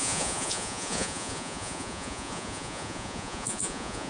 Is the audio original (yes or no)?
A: no